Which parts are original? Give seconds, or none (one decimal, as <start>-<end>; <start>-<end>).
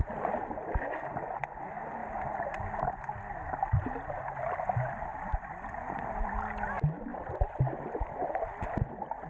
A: 0.0-5.1; 6.1-7.1; 7.6-9.3